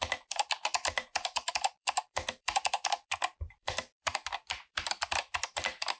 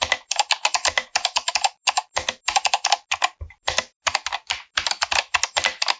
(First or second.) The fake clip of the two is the first